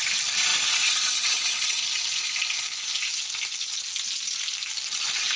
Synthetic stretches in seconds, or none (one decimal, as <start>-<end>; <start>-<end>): none